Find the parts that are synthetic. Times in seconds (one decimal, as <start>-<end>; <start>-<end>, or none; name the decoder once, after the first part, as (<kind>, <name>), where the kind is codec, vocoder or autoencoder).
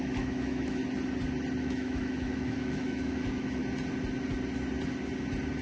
0.0-0.8 (autoencoder, DAC-VAE); 1.6-3.6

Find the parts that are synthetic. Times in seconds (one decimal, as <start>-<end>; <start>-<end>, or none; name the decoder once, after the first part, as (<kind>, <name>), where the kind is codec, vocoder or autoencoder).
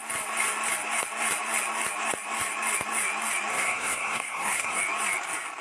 3.5-4.8 (codec, SNAC)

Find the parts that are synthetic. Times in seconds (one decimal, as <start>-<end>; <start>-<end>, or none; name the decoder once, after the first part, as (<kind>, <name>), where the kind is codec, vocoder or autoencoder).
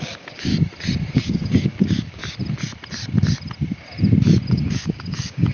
0.0-0.5 (codec, DAC); 1.1-2.2; 4.5-5.5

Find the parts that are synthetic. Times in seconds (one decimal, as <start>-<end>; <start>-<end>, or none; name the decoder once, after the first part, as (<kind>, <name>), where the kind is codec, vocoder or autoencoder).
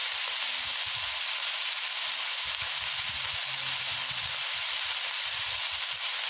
3.8-6.3 (vocoder, BigVGAN v2)